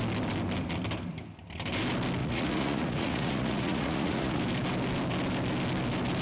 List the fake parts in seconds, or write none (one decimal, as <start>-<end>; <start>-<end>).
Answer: 2.2-4.4